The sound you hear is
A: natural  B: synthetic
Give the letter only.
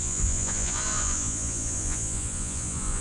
B